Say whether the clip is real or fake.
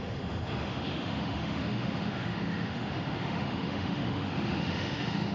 fake